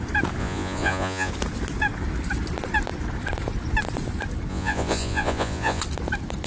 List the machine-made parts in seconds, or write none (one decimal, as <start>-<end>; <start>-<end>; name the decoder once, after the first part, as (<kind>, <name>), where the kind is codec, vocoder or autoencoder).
0.4-1.3 (vocoder, Vocos); 4.5-5.8